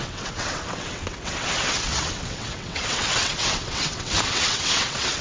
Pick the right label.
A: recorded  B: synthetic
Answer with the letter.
B